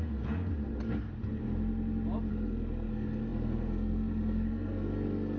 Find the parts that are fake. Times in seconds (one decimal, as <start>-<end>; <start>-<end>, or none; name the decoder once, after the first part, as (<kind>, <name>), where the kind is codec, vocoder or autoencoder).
0.0-0.5 (codec, SNAC); 2.3-5.4